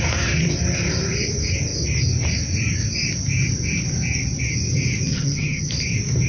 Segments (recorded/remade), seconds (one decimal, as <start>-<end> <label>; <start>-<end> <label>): 0.0-5.1 recorded; 5.1-5.7 remade; 5.7-6.3 recorded